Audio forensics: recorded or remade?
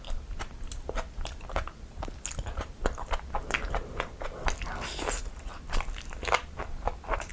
recorded